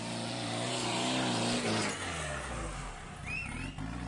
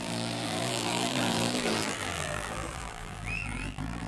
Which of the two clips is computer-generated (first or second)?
second